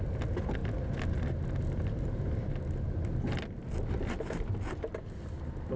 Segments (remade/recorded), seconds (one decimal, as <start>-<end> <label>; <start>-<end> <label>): 0.0-5.8 recorded